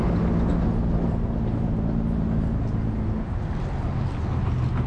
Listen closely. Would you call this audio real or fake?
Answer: real